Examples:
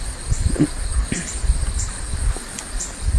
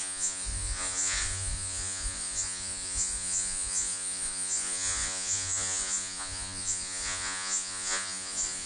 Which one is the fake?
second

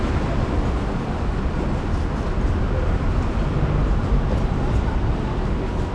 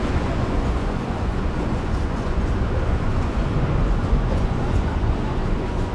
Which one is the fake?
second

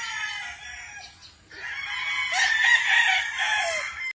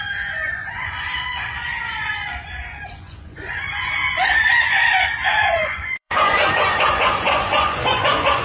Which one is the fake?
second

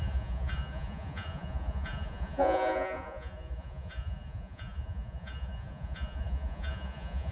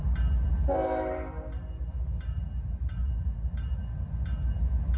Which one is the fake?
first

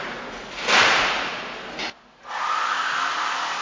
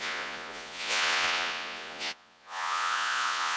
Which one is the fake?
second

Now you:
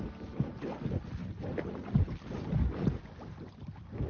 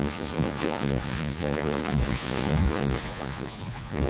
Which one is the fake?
second